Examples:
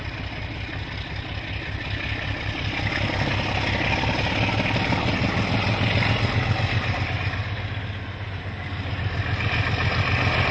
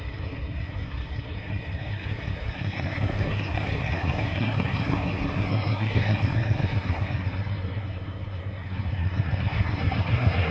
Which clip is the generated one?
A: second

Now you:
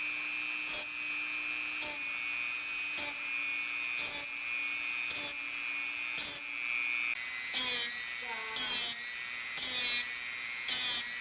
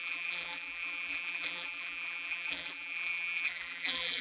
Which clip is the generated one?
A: second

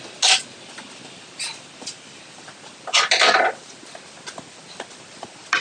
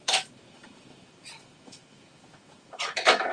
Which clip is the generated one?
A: second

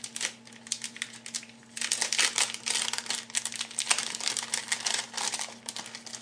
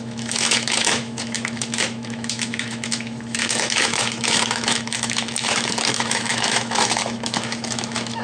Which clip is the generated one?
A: second